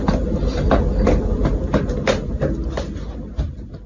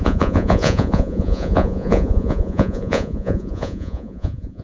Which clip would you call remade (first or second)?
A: second